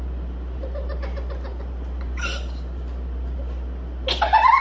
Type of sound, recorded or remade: recorded